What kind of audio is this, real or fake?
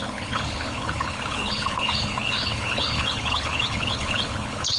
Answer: fake